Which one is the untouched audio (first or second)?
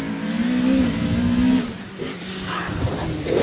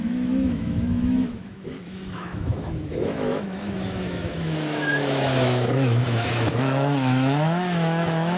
first